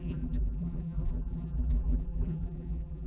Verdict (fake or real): fake